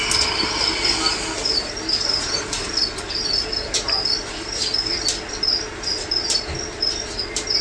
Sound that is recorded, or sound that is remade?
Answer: recorded